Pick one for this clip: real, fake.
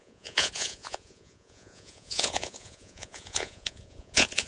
fake